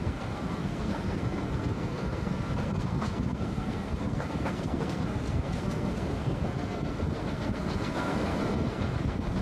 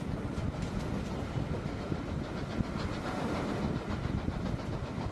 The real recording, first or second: second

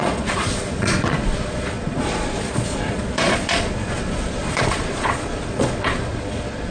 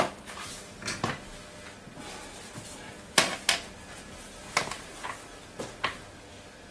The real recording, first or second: second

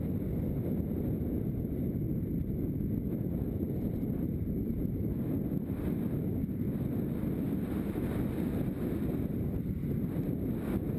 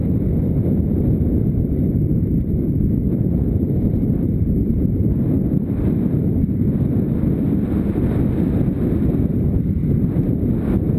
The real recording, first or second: first